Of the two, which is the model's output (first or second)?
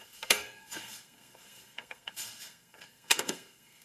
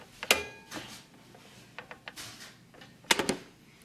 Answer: first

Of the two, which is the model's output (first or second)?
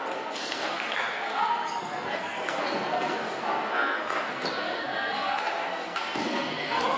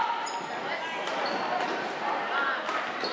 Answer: first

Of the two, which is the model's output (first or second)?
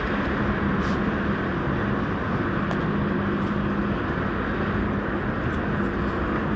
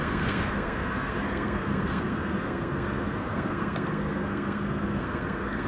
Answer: second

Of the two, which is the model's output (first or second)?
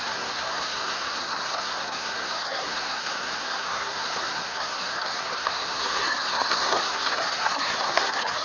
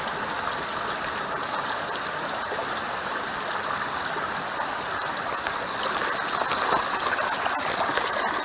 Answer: first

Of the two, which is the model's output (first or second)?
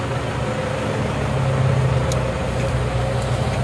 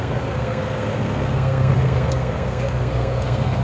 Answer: second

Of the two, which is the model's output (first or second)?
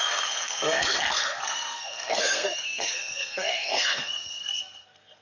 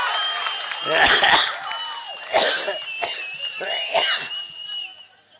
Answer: first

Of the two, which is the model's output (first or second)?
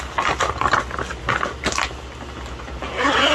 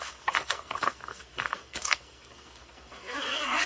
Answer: second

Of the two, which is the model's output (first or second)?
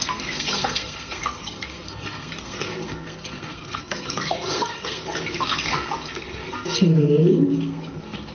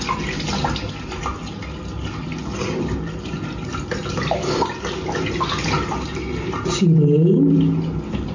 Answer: first